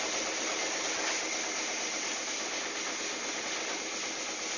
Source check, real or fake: real